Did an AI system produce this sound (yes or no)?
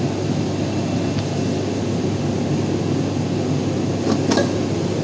no